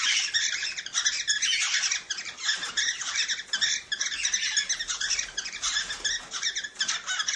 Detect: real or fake real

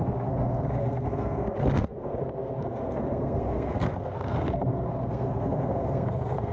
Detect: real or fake fake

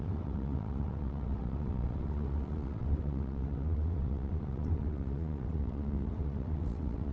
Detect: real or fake fake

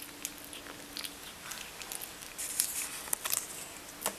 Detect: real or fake real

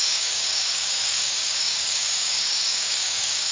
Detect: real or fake fake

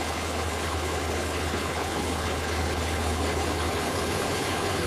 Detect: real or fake fake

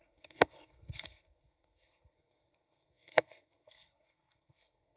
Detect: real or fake fake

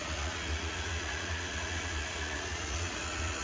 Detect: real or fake fake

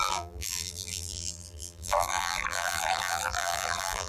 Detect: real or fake fake